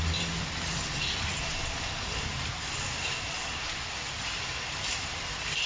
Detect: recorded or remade recorded